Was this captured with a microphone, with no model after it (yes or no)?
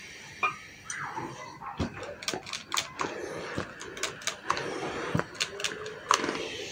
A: yes